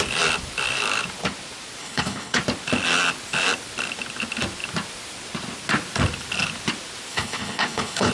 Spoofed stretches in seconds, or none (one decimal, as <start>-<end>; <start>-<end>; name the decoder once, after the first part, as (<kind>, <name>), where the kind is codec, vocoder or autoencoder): 1.8-2.4 (codec, HILCodec); 7.1-8.1